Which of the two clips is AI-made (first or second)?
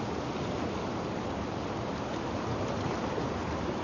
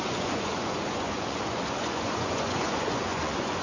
second